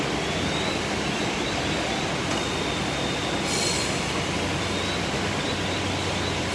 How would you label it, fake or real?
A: real